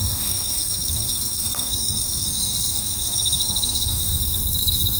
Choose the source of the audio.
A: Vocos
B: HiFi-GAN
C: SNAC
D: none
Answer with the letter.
C